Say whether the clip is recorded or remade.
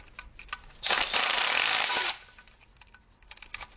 recorded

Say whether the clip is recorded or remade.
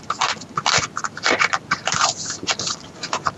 remade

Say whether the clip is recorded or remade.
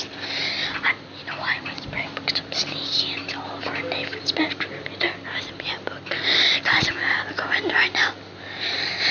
recorded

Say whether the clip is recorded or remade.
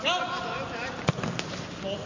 recorded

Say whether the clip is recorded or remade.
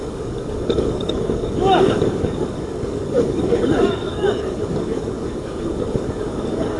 remade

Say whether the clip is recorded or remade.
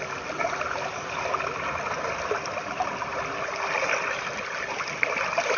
recorded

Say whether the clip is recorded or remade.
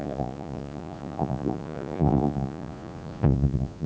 remade